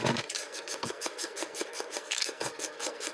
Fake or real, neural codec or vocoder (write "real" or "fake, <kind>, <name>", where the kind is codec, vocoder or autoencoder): fake, codec, SNAC